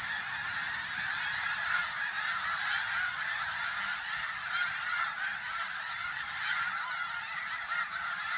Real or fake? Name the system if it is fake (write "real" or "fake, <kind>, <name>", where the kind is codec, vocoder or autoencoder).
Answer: real